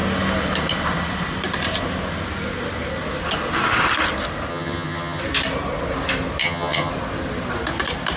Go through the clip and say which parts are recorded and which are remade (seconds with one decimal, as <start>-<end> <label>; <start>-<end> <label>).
0.0-4.5 recorded; 4.5-5.2 remade; 5.2-6.4 recorded; 6.4-6.9 remade; 6.9-8.2 recorded